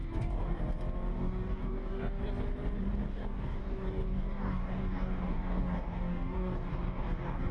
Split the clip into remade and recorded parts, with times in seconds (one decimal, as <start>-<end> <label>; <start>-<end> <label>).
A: 0.0-0.6 remade; 0.6-1.1 recorded; 1.1-2.2 remade; 2.2-3.1 recorded; 3.1-7.5 remade